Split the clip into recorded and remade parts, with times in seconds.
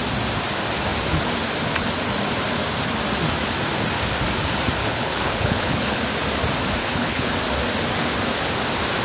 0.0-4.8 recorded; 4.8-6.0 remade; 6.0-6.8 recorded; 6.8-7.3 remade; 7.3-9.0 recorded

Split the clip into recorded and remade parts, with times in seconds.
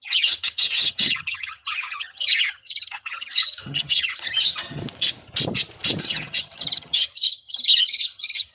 0.0-4.8 remade; 4.8-6.0 recorded; 6.0-8.5 remade